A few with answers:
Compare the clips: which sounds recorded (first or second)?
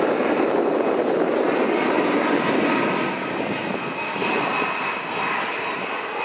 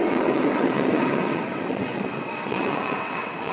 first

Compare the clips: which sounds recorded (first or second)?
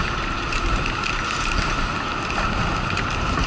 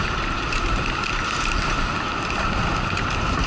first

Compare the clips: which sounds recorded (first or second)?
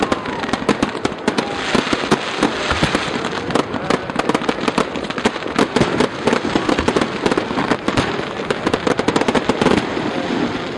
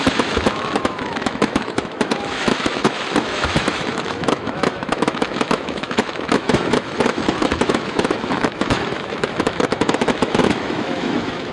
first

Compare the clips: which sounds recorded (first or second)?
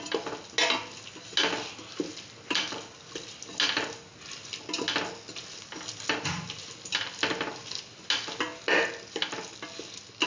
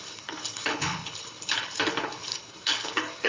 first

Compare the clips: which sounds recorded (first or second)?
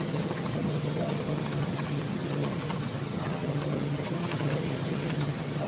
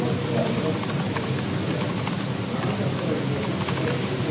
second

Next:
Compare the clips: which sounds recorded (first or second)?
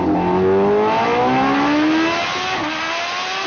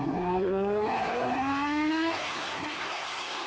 first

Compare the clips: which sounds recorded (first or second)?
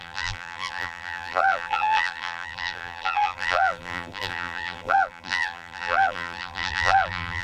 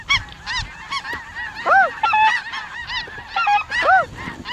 second